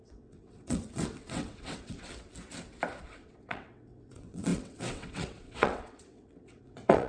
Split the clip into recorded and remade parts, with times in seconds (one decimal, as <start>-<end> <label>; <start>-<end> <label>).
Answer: 0.0-2.1 remade; 2.1-3.0 recorded; 3.0-7.1 remade